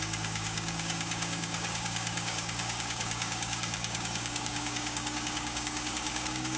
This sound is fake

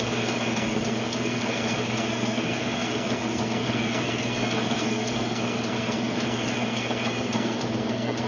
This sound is fake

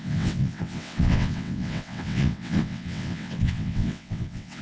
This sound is fake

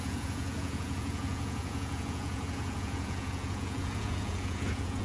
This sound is fake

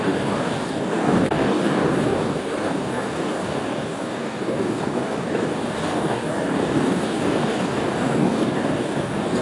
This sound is fake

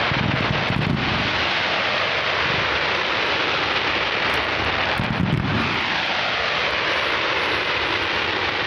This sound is real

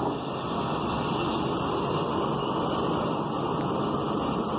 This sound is real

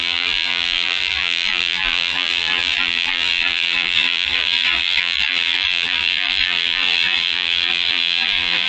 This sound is fake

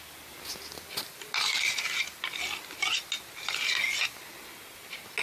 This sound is real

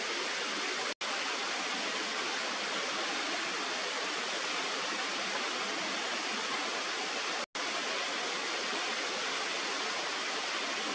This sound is real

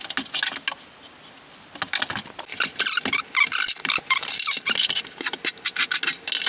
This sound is real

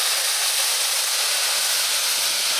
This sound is real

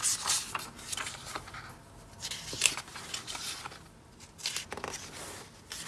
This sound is real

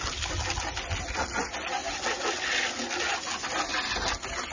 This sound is real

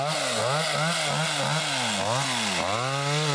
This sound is real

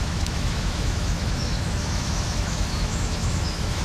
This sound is fake